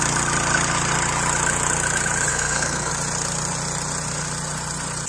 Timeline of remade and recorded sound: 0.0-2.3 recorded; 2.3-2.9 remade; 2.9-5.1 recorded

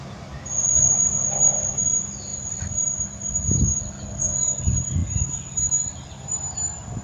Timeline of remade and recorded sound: 0.0-7.0 recorded

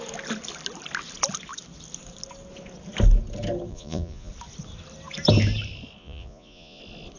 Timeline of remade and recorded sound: 0.0-3.7 recorded; 3.7-4.3 remade; 4.3-6.0 recorded; 6.0-6.8 remade; 6.8-7.2 recorded

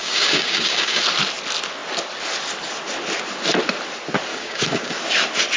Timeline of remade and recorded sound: 0.0-1.0 remade; 1.0-4.3 recorded; 4.3-4.9 remade; 4.9-5.6 recorded

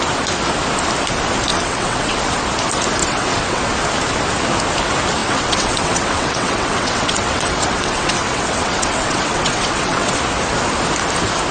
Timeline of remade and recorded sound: 0.0-1.5 recorded; 1.5-2.2 remade; 2.2-3.0 recorded; 3.0-3.7 remade; 3.7-5.2 recorded; 5.2-10.2 remade; 10.2-11.5 recorded

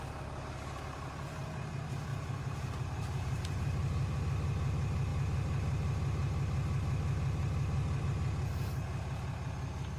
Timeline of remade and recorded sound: 0.0-2.1 recorded; 2.1-4.2 remade; 4.2-10.0 recorded

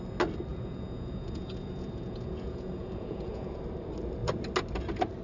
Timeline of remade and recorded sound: 0.0-0.5 recorded; 0.5-3.6 remade; 3.6-5.2 recorded

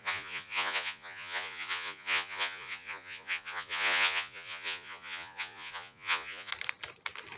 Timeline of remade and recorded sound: 0.0-6.5 remade; 6.5-7.4 recorded